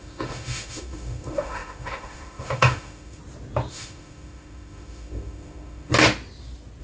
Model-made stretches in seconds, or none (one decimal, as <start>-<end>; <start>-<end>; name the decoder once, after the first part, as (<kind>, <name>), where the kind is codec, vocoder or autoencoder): 0.0-3.2 (autoencoder, DAC-VAE); 3.7-5.9